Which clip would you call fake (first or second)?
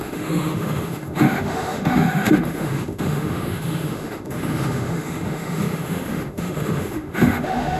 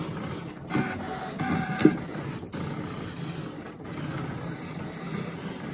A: first